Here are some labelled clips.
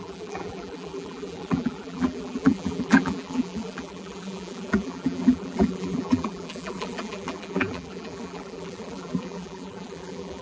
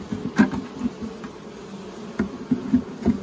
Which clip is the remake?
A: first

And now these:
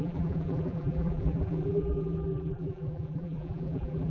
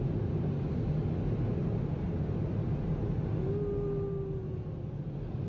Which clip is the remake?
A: first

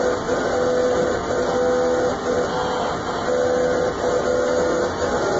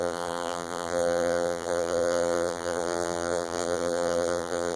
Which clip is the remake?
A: second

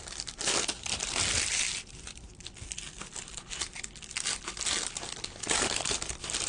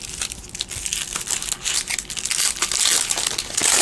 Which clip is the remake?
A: first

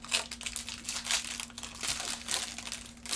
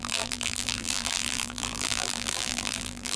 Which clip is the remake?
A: second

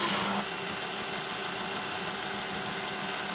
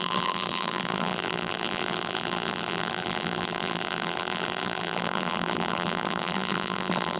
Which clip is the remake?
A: second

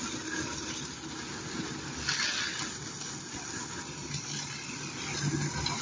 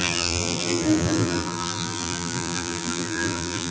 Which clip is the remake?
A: second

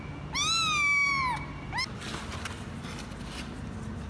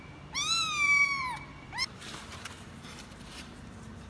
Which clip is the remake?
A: second